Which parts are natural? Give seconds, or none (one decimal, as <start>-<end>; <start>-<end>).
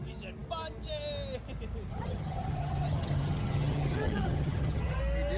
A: 0.0-1.9; 5.0-5.4